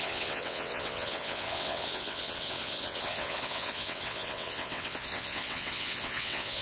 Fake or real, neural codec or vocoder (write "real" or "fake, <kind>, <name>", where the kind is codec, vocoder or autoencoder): fake, vocoder, WaveNeXt